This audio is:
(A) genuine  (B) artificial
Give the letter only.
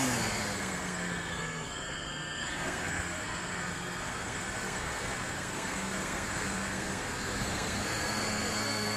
B